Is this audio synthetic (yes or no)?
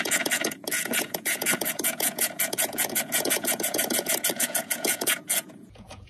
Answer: yes